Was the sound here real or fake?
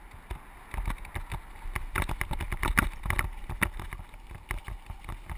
real